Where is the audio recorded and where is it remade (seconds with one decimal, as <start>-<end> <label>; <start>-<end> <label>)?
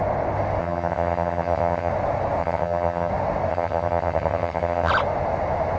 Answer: 0.0-0.6 recorded; 0.6-1.9 remade; 1.9-2.4 recorded; 2.4-3.1 remade; 3.1-3.5 recorded; 3.5-4.9 remade; 4.9-5.8 recorded